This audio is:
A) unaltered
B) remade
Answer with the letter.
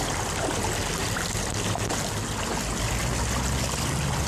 A